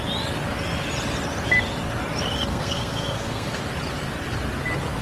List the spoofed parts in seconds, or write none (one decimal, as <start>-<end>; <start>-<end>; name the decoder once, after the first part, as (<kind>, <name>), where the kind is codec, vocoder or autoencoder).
2.5-3.6 (codec, SNAC)